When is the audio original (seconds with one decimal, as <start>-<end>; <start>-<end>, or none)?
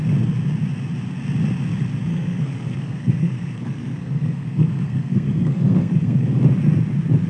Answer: 0.0-2.1; 6.4-7.3